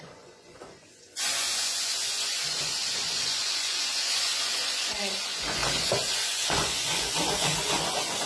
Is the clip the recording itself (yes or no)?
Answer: no